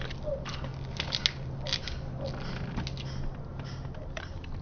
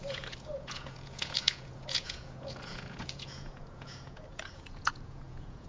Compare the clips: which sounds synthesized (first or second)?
second